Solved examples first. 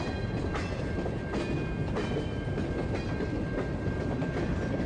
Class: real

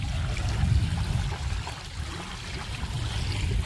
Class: real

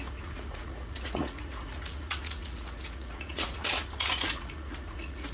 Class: fake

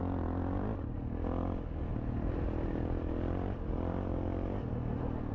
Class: real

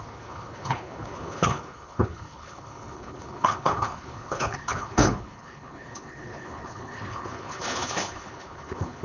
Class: fake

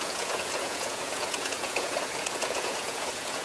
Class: fake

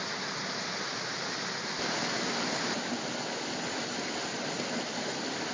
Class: real